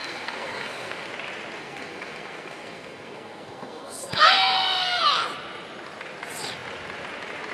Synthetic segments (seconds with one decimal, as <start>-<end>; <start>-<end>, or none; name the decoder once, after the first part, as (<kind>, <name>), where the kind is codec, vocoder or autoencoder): 0.0-1.1 (codec, SNAC); 1.6-5.0